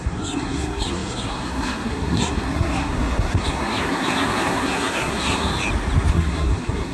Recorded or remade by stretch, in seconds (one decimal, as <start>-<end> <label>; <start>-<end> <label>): 0.0-5.5 remade; 5.5-6.1 recorded; 6.1-6.9 remade

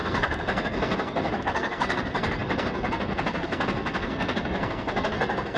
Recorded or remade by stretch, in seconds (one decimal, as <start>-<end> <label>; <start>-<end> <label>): 0.0-5.6 remade